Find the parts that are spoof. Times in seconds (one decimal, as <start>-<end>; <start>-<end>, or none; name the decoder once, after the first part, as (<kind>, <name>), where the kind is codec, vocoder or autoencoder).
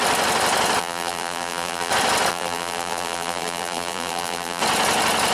0.8-1.9 (vocoder, BigVGAN v2); 2.3-4.6